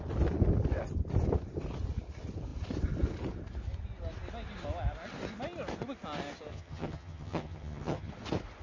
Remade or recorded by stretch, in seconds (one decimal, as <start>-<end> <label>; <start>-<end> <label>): 0.0-6.5 recorded; 6.5-8.1 remade; 8.1-8.6 recorded